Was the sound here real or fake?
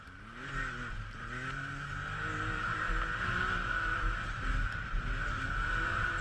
real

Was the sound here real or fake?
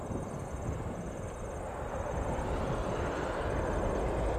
real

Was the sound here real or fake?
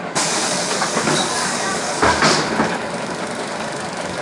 fake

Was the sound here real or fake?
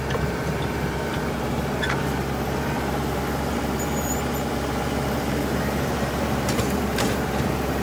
fake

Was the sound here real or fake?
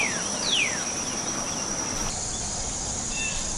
fake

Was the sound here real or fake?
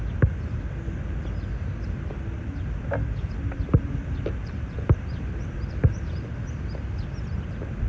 real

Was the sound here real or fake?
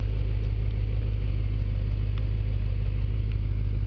real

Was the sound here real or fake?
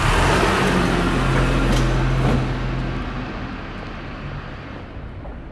real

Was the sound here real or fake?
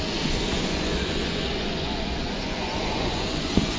fake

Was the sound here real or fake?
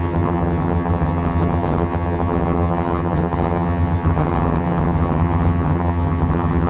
fake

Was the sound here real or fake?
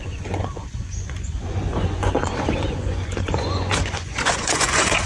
fake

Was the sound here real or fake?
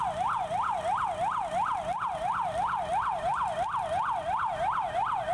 real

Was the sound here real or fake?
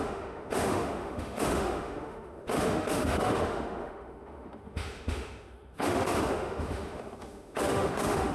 fake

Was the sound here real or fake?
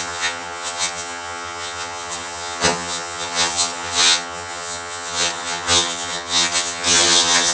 fake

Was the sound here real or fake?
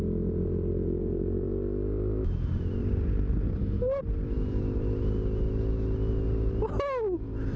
real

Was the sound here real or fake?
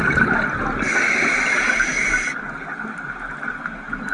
real